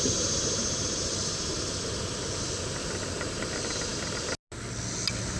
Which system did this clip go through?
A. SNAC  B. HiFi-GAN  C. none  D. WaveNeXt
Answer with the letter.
C